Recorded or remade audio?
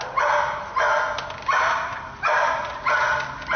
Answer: recorded